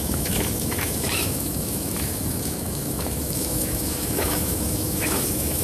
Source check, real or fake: fake